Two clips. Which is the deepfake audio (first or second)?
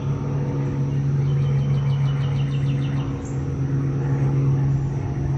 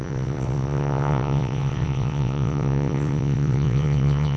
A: second